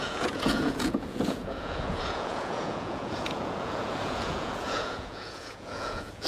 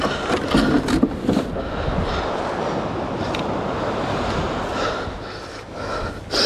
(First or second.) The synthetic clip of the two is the first